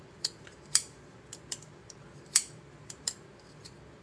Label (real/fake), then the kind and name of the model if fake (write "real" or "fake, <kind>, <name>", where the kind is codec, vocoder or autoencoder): fake, vocoder, BigVGAN v2